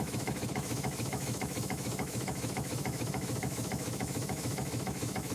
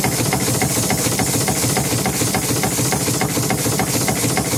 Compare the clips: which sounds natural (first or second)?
second